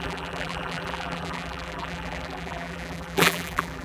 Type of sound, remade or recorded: remade